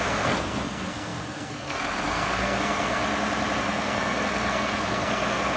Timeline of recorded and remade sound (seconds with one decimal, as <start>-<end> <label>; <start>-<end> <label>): 0.0-3.0 remade; 3.0-3.6 recorded; 3.6-5.6 remade